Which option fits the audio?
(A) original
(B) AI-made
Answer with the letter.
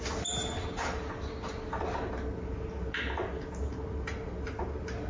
A